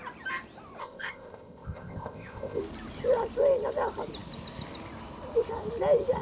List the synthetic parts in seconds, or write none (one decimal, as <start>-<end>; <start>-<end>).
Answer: 0.8-2.6